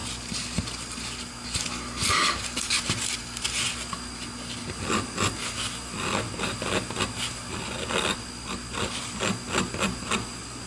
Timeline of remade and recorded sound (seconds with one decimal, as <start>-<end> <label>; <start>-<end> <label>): 0.0-10.7 recorded

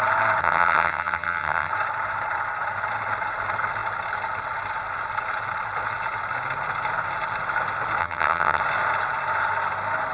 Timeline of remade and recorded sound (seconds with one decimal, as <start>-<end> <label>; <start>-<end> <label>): 0.0-0.4 recorded; 0.4-1.7 remade; 1.7-8.0 recorded; 8.0-8.6 remade; 8.6-10.1 recorded

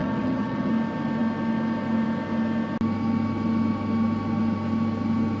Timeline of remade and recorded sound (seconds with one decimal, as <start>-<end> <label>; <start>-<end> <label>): 0.0-0.7 remade; 0.7-5.4 recorded

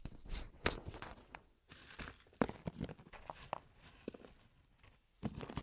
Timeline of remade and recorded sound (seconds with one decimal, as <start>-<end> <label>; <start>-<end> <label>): 0.0-1.8 remade; 1.8-5.6 recorded

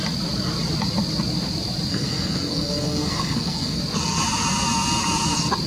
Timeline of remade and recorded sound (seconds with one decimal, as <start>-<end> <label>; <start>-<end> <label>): 0.0-1.9 recorded; 1.9-3.8 remade; 3.8-5.7 recorded